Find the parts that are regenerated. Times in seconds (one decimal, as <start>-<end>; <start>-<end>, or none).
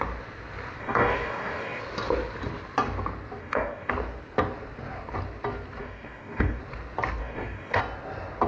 0.8-1.8; 3.4-3.9; 5.8-6.6; 7.2-7.8